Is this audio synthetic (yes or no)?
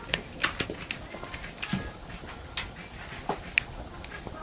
no